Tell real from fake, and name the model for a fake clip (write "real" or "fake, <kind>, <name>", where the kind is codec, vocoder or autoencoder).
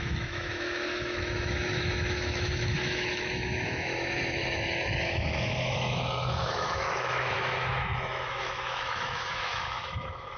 fake, autoencoder, DAC-VAE